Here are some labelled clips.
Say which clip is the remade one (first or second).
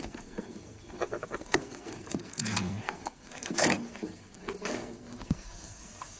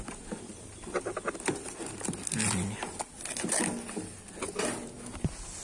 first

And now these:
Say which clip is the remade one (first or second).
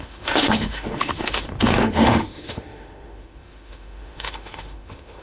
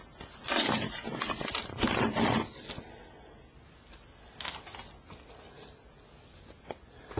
first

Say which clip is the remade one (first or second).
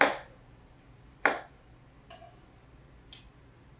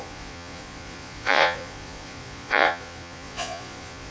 second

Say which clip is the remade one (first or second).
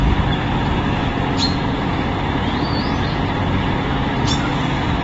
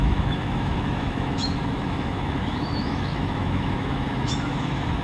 second